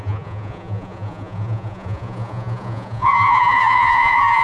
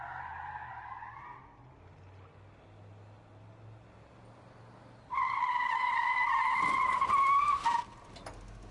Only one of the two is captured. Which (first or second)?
second